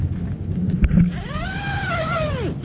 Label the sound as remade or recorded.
recorded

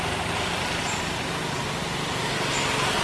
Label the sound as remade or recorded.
recorded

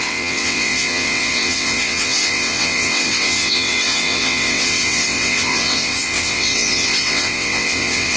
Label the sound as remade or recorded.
remade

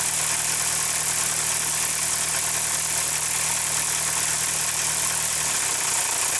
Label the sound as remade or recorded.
recorded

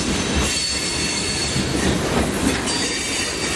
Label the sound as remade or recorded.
recorded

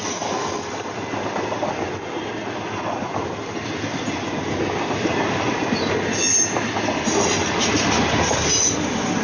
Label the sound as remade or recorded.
recorded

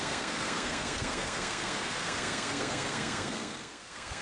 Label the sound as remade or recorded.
remade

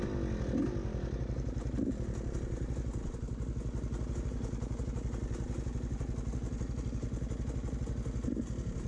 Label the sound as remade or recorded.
recorded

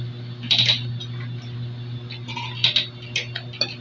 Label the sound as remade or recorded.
recorded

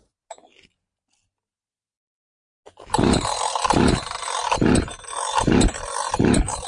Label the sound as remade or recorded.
recorded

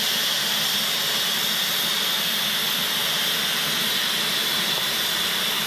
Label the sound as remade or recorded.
remade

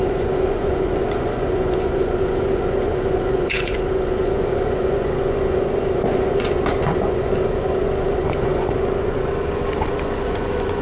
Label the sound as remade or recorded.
remade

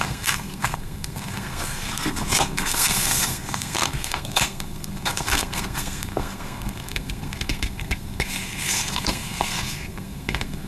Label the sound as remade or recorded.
remade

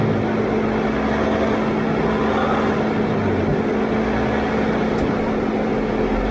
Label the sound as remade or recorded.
recorded